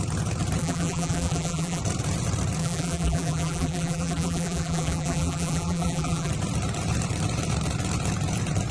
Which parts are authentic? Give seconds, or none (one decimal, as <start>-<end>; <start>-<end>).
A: 0.0-0.6; 1.8-2.6; 6.3-8.7